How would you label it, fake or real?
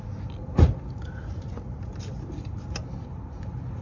real